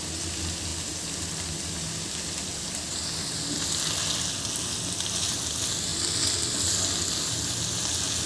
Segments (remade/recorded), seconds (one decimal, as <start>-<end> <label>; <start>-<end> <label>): 0.0-8.3 recorded